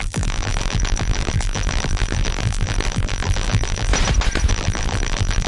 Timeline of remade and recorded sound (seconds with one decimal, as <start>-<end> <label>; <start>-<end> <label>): 0.0-3.9 remade; 3.9-4.5 recorded; 4.5-5.5 remade